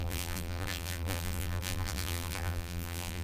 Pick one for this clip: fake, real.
fake